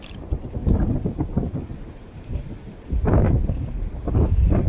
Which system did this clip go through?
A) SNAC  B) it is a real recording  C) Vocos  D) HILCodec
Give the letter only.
B